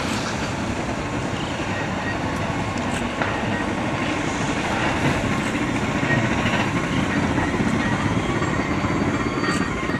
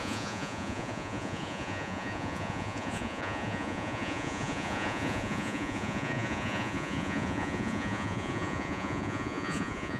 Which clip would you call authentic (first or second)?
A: first